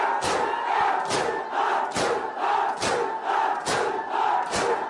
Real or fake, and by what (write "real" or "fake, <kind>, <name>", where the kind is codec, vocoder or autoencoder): real